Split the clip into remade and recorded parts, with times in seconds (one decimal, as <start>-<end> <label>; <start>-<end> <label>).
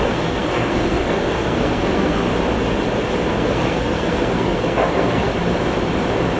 0.0-2.3 remade; 2.3-3.3 recorded; 3.3-5.3 remade; 5.3-6.4 recorded